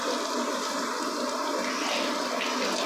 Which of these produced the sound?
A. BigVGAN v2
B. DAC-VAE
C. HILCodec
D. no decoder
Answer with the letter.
D